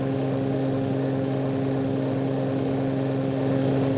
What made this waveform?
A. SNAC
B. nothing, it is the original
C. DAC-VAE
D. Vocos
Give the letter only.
C